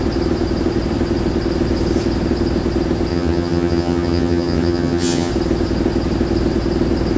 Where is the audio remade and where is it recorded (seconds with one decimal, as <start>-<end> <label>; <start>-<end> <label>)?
0.0-3.1 recorded; 3.1-5.3 remade; 5.3-7.2 recorded